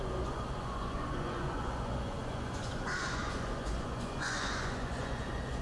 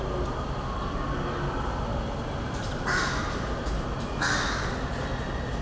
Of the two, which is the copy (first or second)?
first